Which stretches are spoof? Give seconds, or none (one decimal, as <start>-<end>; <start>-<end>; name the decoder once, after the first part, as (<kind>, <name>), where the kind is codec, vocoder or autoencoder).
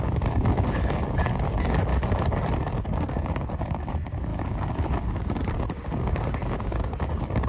0.0-1.9 (codec, DAC); 2.8-7.5